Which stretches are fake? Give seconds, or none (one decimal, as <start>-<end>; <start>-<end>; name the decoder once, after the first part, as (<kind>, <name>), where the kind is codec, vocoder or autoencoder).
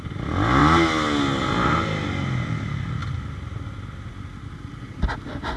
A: none